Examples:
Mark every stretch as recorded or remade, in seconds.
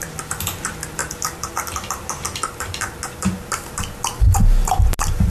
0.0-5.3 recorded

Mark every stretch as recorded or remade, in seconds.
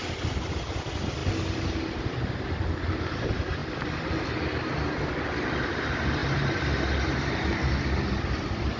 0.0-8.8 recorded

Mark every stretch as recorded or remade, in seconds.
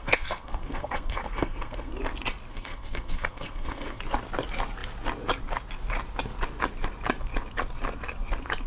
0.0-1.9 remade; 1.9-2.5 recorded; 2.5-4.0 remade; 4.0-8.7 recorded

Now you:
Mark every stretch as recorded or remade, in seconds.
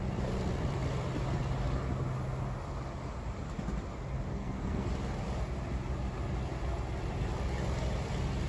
0.0-4.3 recorded; 4.3-4.9 remade; 4.9-8.5 recorded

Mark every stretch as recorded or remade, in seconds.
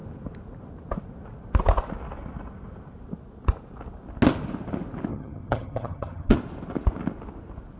0.0-5.1 recorded; 5.1-6.4 remade; 6.4-7.8 recorded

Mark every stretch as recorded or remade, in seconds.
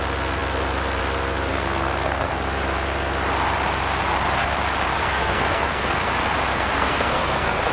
0.0-1.5 recorded; 1.5-2.3 remade; 2.3-5.0 recorded; 5.0-6.1 remade; 6.1-6.5 recorded; 6.5-7.7 remade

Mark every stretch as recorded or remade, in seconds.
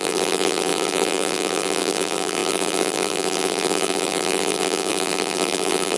0.0-6.0 remade